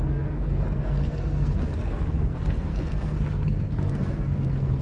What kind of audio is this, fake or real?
fake